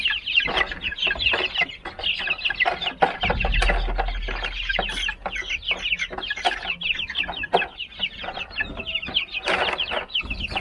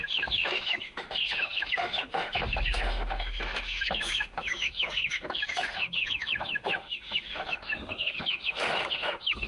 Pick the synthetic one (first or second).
second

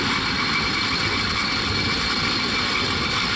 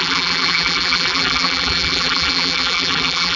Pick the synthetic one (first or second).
second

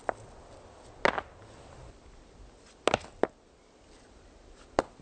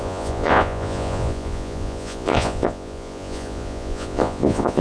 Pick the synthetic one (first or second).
second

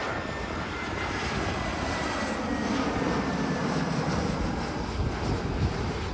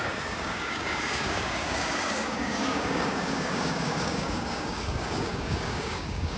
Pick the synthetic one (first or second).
second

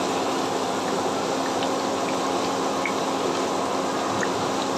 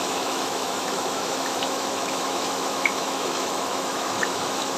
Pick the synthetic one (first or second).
second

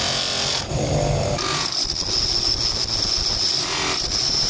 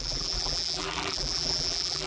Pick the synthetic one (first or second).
second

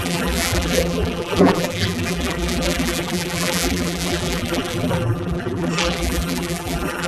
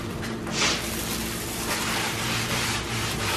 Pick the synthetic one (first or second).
first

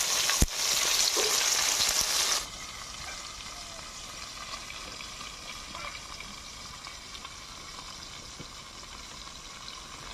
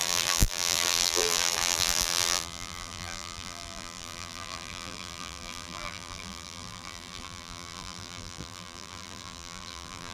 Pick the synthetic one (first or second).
second